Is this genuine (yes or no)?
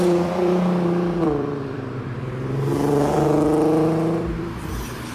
no